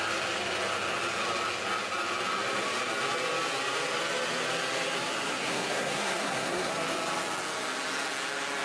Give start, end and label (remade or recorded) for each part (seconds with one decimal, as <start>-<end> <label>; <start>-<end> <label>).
0.0-5.3 recorded; 5.3-6.7 remade; 6.7-8.6 recorded